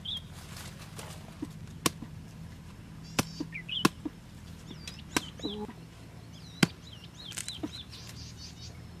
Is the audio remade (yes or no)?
no